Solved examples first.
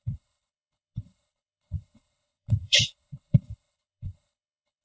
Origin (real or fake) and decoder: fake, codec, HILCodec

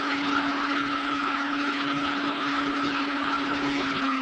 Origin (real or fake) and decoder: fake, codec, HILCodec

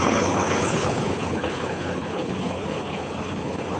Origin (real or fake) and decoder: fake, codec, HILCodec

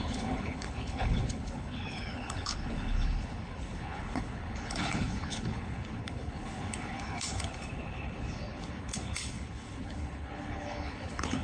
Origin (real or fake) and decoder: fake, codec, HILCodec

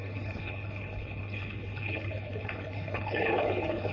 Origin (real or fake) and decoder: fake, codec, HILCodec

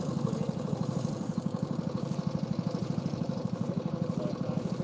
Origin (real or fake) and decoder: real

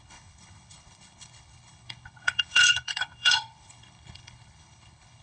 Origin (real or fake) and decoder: fake, codec, HILCodec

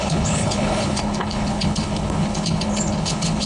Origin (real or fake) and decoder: fake, codec, HILCodec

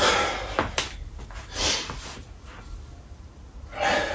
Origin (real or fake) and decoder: real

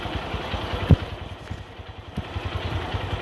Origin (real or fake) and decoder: real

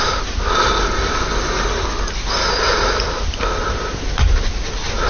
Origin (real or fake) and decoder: real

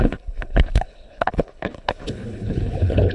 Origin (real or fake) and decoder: fake, codec, HILCodec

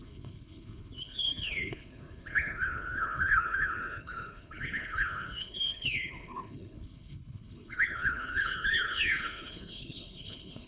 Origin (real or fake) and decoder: fake, codec, HILCodec